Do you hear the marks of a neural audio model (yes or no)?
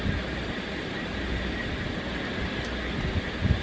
no